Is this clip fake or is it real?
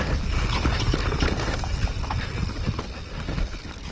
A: real